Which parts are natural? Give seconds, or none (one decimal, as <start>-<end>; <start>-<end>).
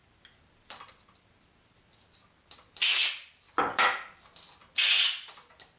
0.0-5.8